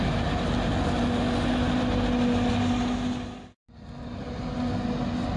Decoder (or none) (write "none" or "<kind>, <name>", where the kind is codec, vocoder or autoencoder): none